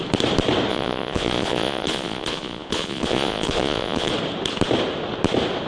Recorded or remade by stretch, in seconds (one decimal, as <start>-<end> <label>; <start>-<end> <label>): 0.0-0.7 recorded; 0.7-4.1 remade; 4.1-5.7 recorded